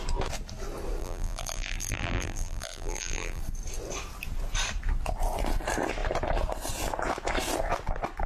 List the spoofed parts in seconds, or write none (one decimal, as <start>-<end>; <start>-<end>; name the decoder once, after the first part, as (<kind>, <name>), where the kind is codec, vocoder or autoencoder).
1.0-3.4 (vocoder, BigVGAN v2)